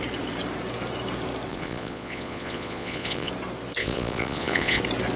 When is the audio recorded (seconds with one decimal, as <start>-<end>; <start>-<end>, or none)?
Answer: 0.0-1.5; 3.3-3.8; 4.8-5.2